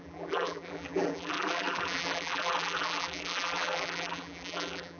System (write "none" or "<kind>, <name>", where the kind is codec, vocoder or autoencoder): vocoder, BigVGAN v2